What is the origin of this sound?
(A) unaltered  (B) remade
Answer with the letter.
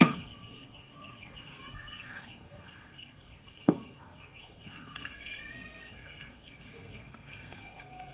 B